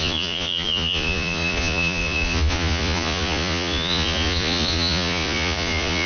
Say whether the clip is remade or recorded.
remade